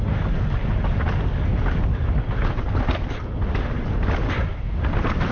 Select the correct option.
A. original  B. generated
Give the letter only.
A